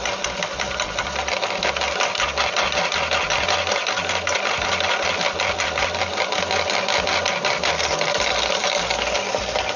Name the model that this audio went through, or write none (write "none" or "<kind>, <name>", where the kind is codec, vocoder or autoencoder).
none